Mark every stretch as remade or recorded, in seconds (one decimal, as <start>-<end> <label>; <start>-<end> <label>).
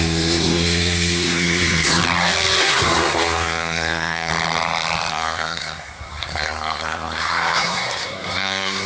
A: 0.0-2.0 remade; 2.0-2.6 recorded; 2.6-4.3 remade; 4.3-5.1 recorded; 5.1-8.9 remade